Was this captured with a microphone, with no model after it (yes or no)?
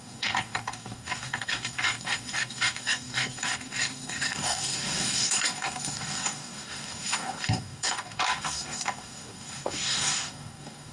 no